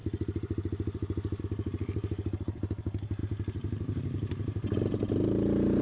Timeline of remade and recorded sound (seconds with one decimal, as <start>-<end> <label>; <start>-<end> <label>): 0.0-5.8 recorded